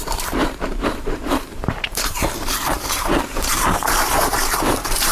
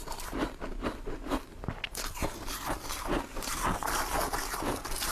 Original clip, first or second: second